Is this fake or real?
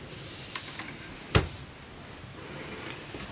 real